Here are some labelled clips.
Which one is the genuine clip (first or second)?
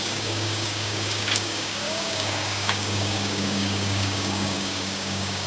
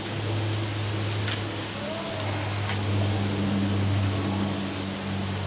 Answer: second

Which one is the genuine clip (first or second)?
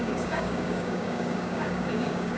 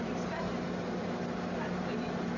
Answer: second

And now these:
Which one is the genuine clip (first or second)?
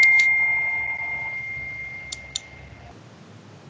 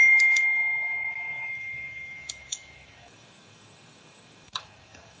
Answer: first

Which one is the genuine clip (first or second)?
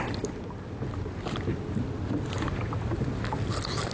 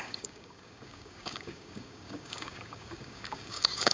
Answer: first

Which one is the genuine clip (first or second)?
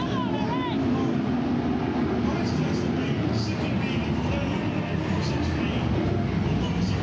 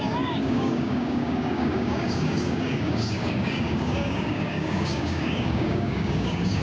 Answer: first